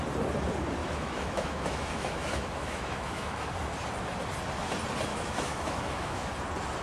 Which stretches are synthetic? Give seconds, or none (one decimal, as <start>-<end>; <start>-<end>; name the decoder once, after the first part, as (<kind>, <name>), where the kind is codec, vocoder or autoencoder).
0.8-3.5 (autoencoder, DAC-VAE); 5.1-6.3